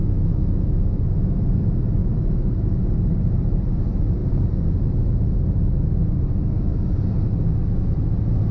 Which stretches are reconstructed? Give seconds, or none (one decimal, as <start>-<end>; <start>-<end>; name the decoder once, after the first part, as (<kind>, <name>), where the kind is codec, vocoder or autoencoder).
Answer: 0.0-1.0 (autoencoder, DAC-VAE); 2.0-2.8